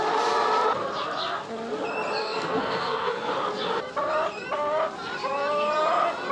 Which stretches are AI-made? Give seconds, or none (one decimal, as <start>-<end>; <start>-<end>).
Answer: 2.2-3.3